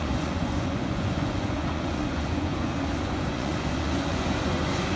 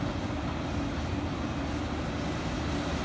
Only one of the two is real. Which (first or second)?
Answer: second